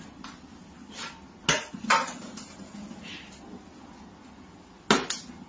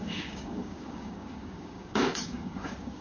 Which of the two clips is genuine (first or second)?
first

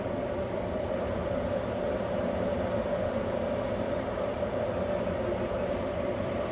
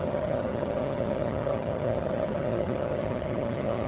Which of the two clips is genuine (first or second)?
first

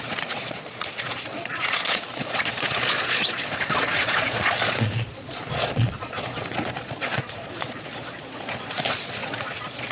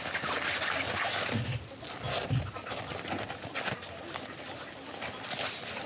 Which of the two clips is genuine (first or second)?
second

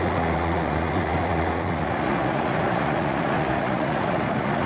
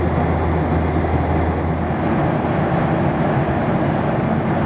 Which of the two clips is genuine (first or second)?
second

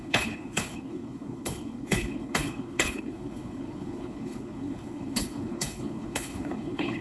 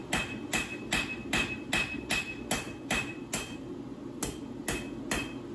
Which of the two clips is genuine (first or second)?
second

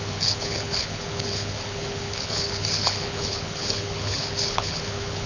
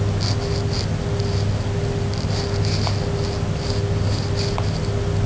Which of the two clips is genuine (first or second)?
second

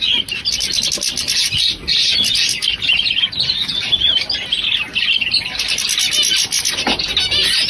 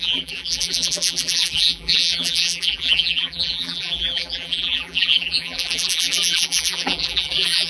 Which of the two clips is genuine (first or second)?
first